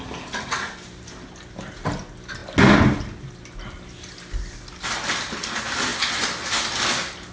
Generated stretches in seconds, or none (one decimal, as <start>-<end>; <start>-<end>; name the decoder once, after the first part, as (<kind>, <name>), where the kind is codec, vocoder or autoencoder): none